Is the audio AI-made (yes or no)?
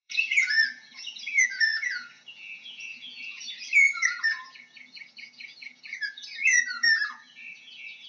yes